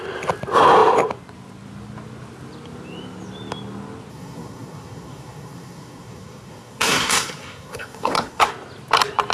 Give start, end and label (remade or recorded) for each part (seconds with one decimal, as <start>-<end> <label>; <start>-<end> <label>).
0.0-4.1 recorded; 4.1-8.5 remade; 8.5-9.3 recorded